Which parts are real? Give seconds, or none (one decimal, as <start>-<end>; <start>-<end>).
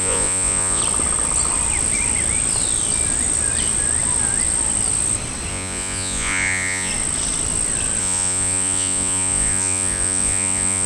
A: 0.8-5.5; 6.9-8.0